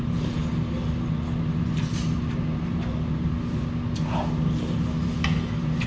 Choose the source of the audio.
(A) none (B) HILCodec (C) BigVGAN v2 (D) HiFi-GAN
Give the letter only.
A